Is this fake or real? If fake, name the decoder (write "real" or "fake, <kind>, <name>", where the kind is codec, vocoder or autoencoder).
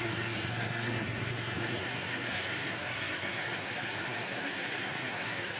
fake, codec, SNAC